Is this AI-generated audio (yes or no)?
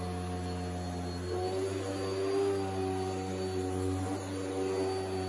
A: no